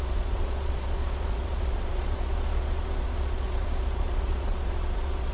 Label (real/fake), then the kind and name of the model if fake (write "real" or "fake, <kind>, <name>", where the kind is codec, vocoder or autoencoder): fake, vocoder, Vocos